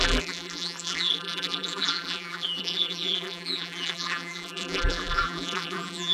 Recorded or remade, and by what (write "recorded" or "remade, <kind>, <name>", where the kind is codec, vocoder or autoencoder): remade, vocoder, BigVGAN v2